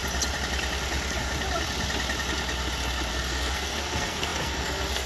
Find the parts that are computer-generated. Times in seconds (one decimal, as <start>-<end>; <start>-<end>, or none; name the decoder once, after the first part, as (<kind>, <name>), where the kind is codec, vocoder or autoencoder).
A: 3.1-5.1 (codec, SNAC)